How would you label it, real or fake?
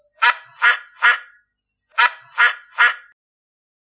real